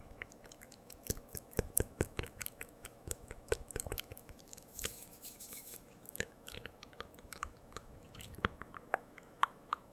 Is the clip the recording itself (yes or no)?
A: no